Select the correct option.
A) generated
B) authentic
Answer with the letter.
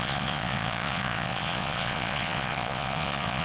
A